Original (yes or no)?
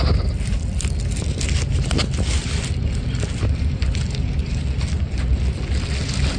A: yes